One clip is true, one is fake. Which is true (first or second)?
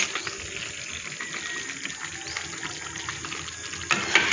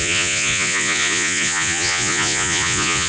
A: first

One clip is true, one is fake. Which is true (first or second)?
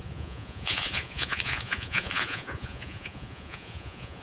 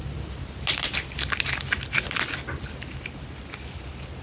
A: second